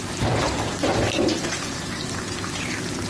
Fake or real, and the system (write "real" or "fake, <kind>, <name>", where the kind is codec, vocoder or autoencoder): fake, vocoder, BigVGAN v2